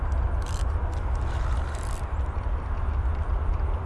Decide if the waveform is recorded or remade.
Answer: recorded